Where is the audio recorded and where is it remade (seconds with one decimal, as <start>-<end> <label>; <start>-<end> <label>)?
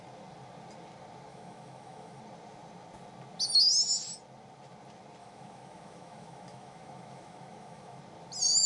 0.0-1.3 recorded; 1.3-2.2 remade; 2.2-5.2 recorded; 5.2-8.0 remade; 8.0-8.7 recorded